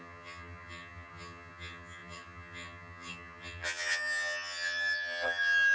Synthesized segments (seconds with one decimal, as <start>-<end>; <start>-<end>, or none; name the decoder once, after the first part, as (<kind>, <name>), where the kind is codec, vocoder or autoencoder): 0.0-5.7 (vocoder, HiFi-GAN)